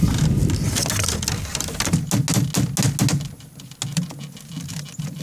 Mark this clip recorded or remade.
recorded